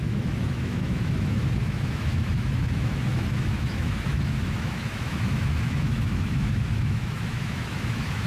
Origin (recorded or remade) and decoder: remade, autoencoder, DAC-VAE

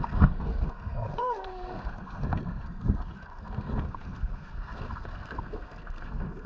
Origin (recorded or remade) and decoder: remade, codec, SNAC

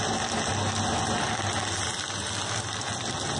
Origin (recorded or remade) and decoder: recorded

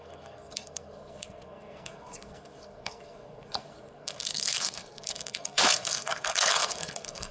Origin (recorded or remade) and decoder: remade, codec, SNAC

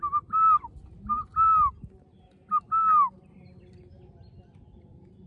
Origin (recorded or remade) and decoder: recorded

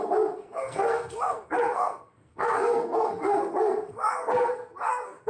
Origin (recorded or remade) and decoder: remade, codec, SNAC